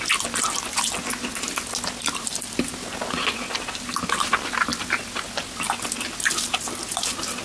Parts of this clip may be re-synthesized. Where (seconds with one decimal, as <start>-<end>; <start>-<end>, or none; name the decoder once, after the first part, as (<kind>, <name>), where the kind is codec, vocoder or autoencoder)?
none